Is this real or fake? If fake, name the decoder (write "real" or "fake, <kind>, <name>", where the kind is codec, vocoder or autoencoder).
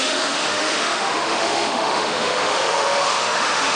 fake, autoencoder, DAC-VAE